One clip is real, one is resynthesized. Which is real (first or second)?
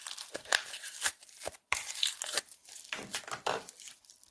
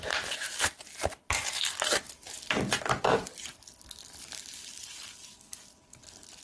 second